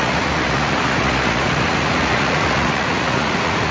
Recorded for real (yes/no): no